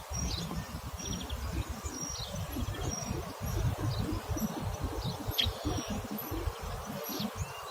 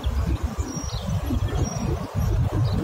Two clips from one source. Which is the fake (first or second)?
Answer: second